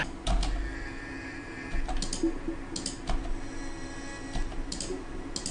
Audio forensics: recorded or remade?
recorded